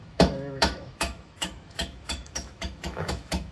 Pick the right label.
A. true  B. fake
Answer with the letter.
B